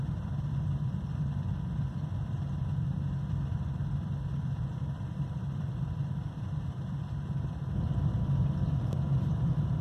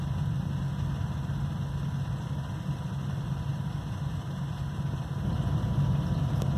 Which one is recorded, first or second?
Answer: second